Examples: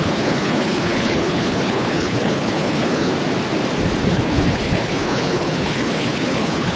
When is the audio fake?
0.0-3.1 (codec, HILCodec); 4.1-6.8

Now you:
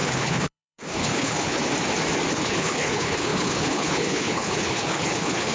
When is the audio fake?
0.0-1.7 (codec, HILCodec); 2.3-5.5

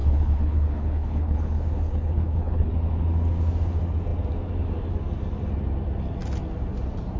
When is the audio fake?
0.0-2.7 (codec, HILCodec)

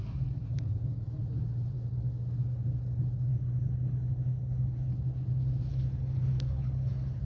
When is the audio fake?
3.3-4.9 (codec, HILCodec); 5.7-7.2

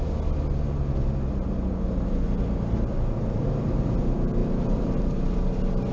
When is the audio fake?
none

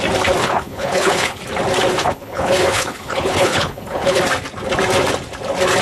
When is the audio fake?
0.4-1.4 (codec, HILCodec); 1.9-4.2